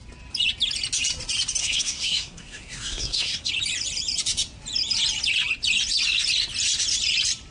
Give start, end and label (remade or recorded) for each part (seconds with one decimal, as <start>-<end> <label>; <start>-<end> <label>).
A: 0.0-1.6 recorded; 1.6-3.5 remade; 3.5-7.5 recorded